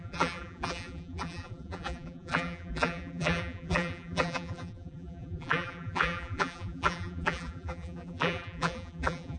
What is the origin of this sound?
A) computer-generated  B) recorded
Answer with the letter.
A